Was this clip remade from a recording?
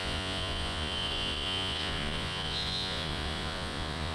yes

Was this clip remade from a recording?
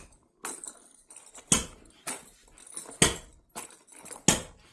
no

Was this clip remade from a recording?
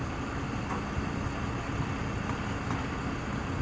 no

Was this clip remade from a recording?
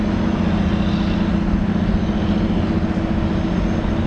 no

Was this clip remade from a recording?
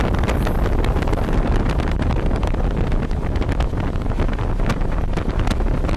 no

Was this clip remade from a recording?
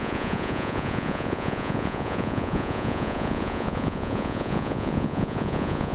yes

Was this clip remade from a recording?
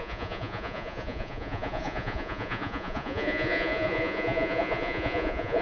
yes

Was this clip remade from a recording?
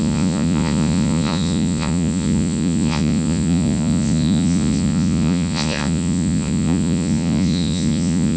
yes